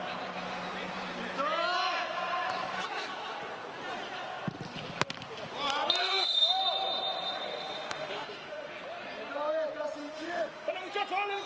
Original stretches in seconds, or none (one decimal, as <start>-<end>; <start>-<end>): 0.0-6.0; 6.6-7.5; 8.7-10.0; 10.7-11.5